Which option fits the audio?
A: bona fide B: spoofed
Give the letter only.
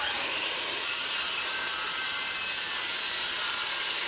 B